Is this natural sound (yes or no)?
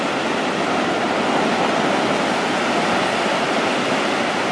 yes